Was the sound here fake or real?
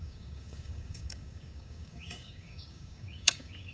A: fake